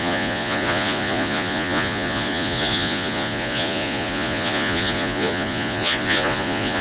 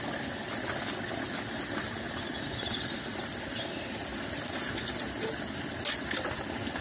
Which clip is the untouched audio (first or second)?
second